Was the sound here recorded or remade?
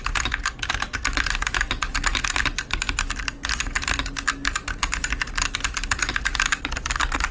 recorded